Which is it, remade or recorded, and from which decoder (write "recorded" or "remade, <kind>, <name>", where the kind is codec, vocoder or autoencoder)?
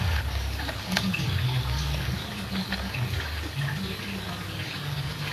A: remade, codec, DAC